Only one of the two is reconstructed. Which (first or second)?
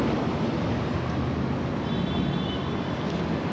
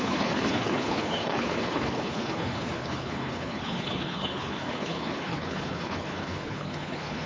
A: second